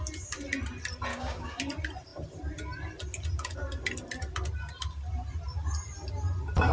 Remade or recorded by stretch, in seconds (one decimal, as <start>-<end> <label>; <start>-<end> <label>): 0.0-1.1 recorded; 1.1-1.6 remade; 1.6-6.7 recorded